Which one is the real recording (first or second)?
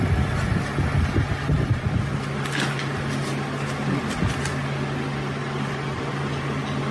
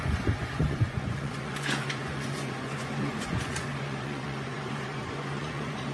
first